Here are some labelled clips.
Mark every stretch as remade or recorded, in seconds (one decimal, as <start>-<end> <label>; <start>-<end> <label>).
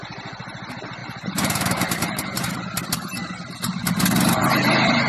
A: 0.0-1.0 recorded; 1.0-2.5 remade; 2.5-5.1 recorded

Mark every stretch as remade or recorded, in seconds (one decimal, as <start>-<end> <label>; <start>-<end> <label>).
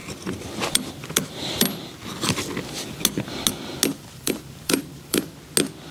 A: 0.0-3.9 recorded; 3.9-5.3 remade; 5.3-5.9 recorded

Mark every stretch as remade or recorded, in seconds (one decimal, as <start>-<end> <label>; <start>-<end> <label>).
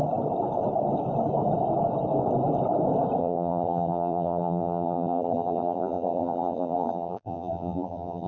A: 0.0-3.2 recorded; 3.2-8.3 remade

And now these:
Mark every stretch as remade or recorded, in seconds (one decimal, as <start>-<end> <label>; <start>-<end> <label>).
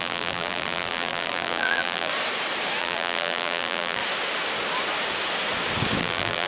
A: 0.0-2.1 remade; 2.1-2.8 recorded; 2.8-4.0 remade; 4.0-6.0 recorded; 6.0-6.5 remade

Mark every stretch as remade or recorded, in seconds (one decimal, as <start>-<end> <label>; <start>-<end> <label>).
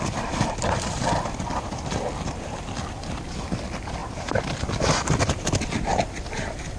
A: 0.0-6.8 remade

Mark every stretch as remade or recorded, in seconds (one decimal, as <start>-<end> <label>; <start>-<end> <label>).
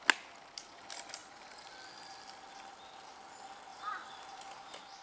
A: 0.0-1.2 recorded; 1.2-2.5 remade; 2.5-3.7 recorded; 3.7-4.2 remade; 4.2-5.0 recorded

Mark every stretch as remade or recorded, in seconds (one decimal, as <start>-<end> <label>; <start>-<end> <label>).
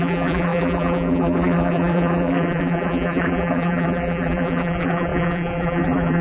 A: 0.0-6.2 remade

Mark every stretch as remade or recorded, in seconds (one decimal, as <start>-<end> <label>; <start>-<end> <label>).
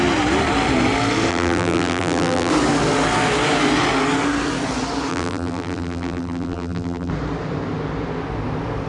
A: 0.0-1.3 recorded; 1.3-2.5 remade; 2.5-5.1 recorded; 5.1-7.1 remade; 7.1-8.9 recorded